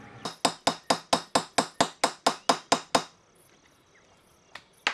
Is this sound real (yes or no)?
yes